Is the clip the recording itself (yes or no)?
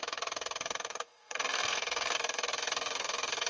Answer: no